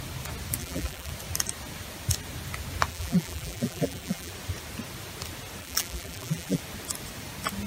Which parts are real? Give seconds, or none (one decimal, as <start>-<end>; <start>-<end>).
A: 0.0-0.6; 1.1-2.9; 4.3-5.6; 6.6-7.7